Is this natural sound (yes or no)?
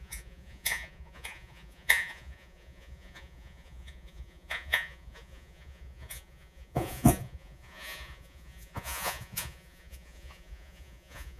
no